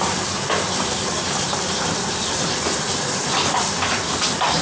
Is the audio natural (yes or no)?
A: no